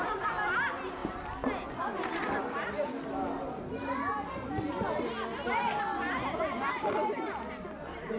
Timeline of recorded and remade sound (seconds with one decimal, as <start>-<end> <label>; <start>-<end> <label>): 0.0-8.2 recorded

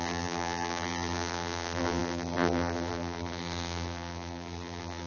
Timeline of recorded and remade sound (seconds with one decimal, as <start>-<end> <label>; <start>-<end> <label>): 0.0-5.1 remade

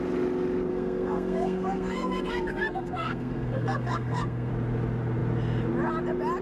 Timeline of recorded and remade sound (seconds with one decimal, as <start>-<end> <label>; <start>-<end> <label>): 0.0-0.7 recorded; 0.7-4.5 remade; 4.5-6.4 recorded

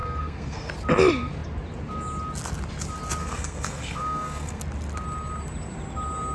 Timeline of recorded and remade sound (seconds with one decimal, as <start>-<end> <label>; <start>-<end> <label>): 0.0-0.7 remade; 0.7-3.2 recorded; 3.2-4.6 remade; 4.6-6.3 recorded

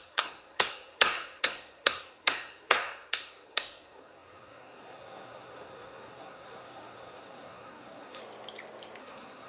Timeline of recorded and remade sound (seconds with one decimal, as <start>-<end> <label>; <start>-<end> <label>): 0.0-8.2 remade; 8.2-9.0 recorded; 9.0-9.5 remade

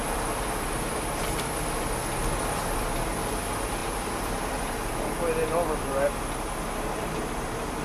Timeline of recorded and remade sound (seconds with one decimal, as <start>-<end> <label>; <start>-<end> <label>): 0.0-7.8 recorded